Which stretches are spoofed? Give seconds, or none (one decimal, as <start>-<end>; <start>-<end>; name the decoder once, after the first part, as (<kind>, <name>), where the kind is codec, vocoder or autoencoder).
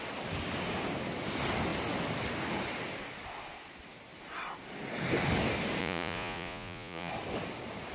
5.8-7.1 (vocoder, Vocos)